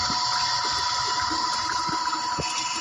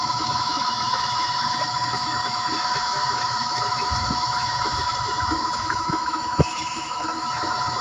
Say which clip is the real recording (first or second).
first